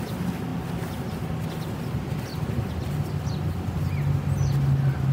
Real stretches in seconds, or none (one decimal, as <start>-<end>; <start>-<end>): 0.0-5.1